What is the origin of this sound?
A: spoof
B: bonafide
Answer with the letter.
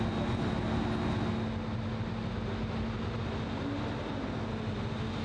B